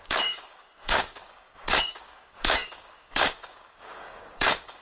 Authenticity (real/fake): fake